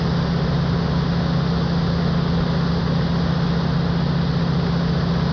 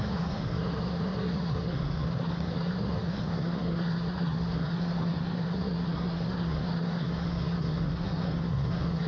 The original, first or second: first